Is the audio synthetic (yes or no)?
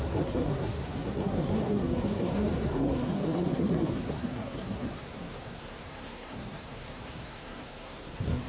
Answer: yes